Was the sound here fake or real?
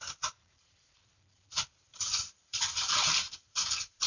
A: fake